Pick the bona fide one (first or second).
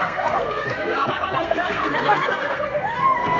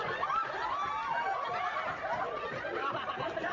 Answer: second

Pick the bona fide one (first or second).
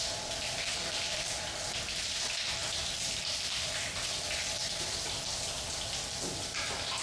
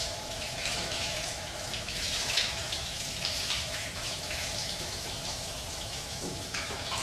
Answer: first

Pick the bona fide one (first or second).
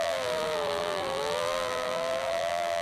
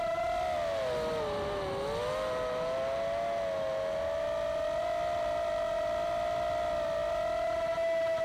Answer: second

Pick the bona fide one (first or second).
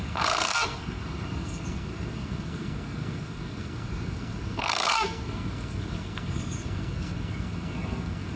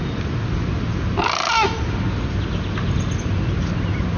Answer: second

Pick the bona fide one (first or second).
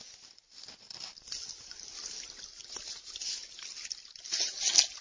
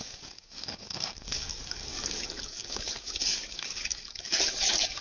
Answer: first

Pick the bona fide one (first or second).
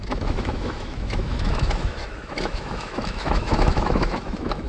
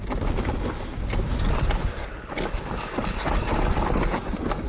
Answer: second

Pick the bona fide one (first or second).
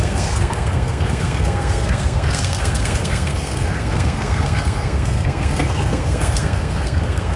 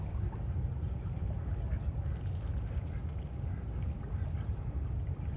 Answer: second